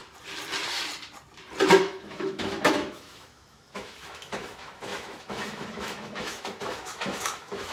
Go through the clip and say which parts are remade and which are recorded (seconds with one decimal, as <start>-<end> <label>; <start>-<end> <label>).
0.0-1.8 recorded; 1.8-7.7 remade

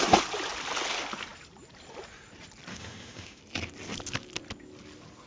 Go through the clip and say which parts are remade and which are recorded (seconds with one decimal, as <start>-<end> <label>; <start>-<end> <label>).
0.0-2.7 recorded; 2.7-3.4 remade; 3.4-5.3 recorded

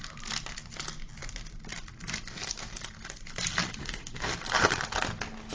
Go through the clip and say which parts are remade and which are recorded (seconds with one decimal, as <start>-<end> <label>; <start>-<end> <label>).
0.0-3.8 recorded; 3.8-4.3 remade; 4.3-5.5 recorded

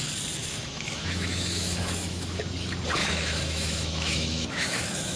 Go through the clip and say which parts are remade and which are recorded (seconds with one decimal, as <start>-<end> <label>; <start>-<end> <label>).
0.0-0.4 recorded; 0.4-2.4 remade; 2.4-3.0 recorded; 3.0-5.2 remade

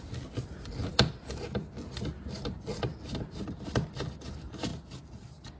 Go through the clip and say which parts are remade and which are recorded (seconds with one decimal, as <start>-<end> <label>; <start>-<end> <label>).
0.0-5.6 recorded